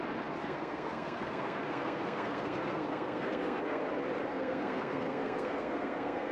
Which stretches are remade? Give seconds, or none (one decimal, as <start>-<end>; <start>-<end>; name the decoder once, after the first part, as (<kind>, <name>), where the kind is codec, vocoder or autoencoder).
0.4-3.8 (codec, SNAC); 4.3-6.3